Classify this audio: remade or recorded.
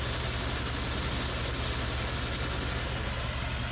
recorded